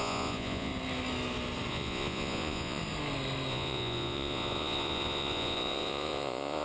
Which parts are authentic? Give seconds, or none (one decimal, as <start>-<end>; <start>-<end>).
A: 0.7-1.7; 2.8-3.5